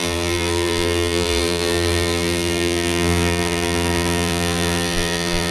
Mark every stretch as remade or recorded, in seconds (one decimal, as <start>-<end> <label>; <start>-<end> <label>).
0.0-5.5 remade